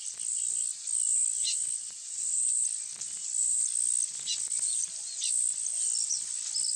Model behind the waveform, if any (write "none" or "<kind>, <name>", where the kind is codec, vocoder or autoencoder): none